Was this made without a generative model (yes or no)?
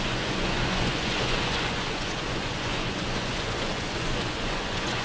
no